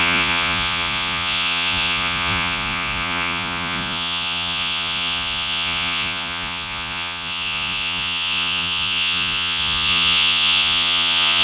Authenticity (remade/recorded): remade